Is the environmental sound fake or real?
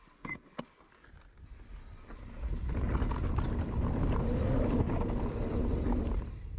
real